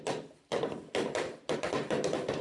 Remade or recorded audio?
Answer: recorded